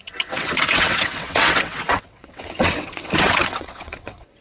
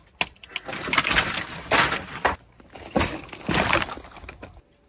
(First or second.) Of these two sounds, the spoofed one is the first